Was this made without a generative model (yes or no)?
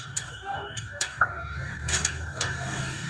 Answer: no